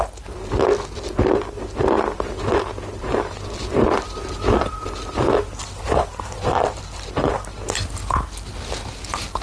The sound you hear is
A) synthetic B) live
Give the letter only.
B